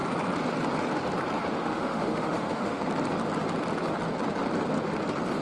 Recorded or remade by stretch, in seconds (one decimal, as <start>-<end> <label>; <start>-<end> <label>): 0.0-1.6 recorded; 1.6-2.8 remade; 2.8-5.4 recorded